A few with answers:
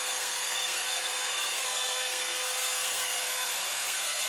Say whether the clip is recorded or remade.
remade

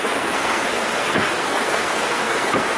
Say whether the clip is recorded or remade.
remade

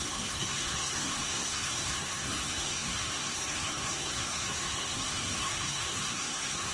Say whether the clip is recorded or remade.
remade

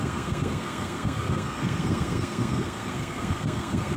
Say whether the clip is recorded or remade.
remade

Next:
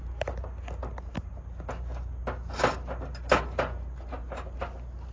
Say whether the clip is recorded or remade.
recorded